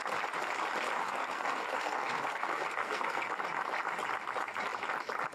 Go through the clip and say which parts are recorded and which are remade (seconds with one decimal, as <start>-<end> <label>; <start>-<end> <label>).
0.0-1.0 recorded; 1.0-3.3 remade; 3.3-5.3 recorded

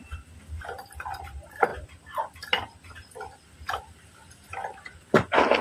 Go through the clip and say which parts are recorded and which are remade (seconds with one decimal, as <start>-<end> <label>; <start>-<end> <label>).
0.0-5.6 recorded

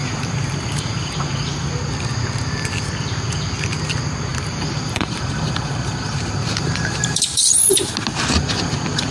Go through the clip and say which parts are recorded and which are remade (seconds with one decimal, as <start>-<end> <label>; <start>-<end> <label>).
0.0-1.7 remade; 1.7-4.3 recorded; 4.3-7.8 remade; 7.8-9.1 recorded

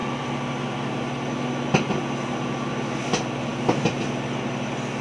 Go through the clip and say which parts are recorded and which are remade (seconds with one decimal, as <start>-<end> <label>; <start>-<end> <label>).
0.0-5.0 recorded

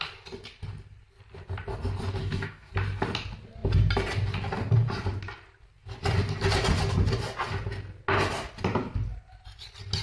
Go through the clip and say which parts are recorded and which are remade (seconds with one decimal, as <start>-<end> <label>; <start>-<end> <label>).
0.0-2.2 recorded; 2.2-2.7 remade; 2.7-10.0 recorded